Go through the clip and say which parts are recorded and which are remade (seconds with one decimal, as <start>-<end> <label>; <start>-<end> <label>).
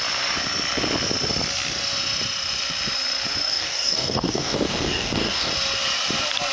0.0-3.5 recorded; 3.5-5.5 remade; 5.5-6.5 recorded